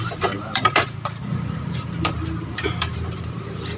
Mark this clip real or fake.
fake